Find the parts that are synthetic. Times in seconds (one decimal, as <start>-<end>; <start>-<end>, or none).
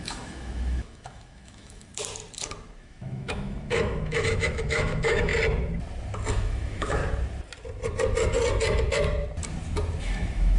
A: 0.0-1.9; 2.8-5.3; 6.3-7.0; 10.0-10.6